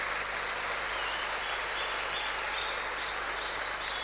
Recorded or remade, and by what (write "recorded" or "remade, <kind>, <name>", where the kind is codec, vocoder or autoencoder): recorded